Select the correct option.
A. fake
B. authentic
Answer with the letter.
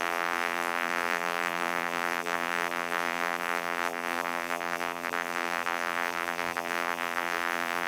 A